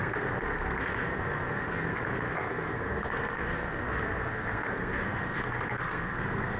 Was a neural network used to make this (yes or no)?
yes